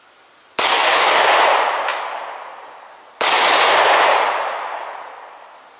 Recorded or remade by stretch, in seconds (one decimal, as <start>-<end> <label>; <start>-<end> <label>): 0.0-0.7 recorded; 0.7-1.2 remade; 1.2-5.8 recorded